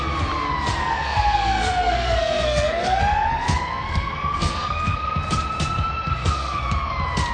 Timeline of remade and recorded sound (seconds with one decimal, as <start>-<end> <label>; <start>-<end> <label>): 0.0-0.8 recorded; 0.8-5.2 remade; 5.2-6.1 recorded; 6.1-6.6 remade; 6.6-7.3 recorded